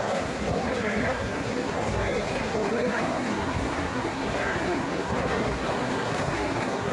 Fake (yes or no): yes